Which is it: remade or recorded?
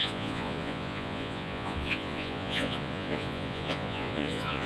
remade